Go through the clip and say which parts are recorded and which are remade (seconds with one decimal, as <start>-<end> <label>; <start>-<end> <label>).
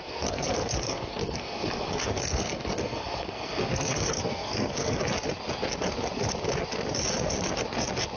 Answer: 0.0-5.0 remade; 5.0-8.2 recorded